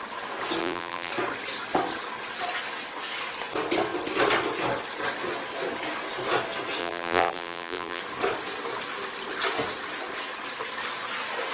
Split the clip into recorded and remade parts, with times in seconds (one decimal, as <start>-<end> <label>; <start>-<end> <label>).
0.0-0.6 recorded; 0.6-1.1 remade; 1.1-6.8 recorded; 6.8-8.0 remade; 8.0-11.5 recorded